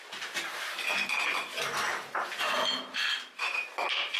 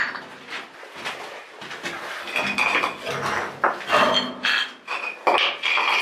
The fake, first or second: first